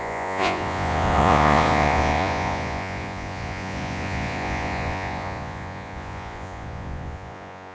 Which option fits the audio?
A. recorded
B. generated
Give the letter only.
B